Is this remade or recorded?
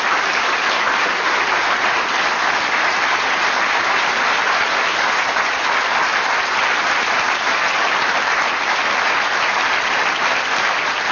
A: recorded